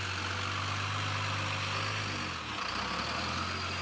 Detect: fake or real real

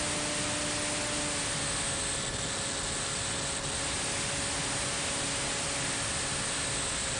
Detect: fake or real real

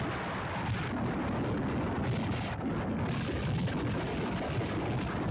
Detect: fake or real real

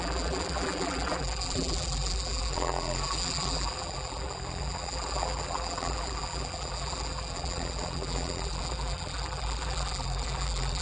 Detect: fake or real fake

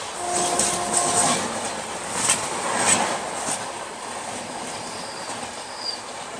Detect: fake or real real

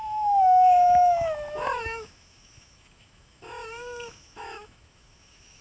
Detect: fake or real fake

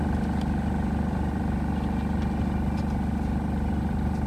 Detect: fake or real real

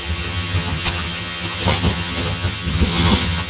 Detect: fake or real fake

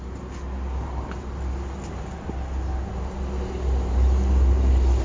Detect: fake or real real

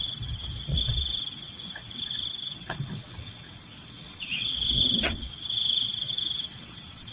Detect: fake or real fake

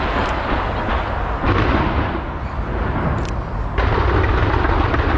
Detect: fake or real real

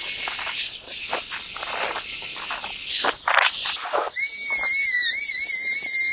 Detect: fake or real real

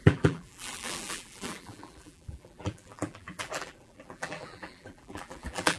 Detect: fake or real fake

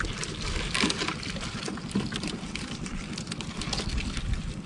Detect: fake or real real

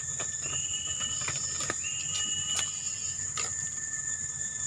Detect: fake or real fake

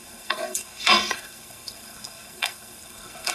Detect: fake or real fake